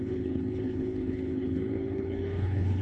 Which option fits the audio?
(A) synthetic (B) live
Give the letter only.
A